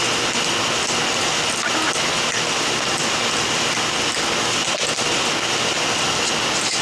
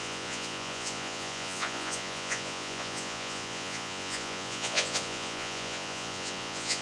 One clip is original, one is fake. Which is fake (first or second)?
second